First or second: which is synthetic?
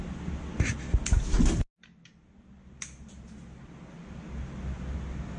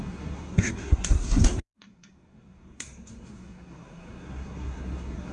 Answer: second